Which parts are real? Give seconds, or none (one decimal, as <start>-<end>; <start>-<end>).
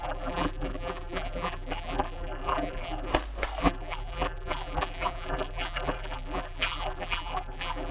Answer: 3.1-3.6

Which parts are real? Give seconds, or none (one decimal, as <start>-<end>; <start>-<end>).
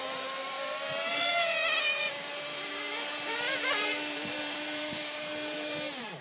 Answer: none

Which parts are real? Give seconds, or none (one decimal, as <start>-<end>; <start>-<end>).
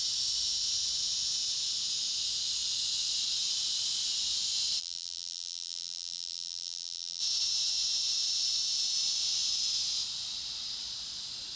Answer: 0.0-4.8; 7.2-11.6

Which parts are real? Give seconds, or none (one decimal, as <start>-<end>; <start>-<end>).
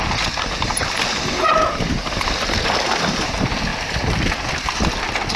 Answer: 0.0-5.4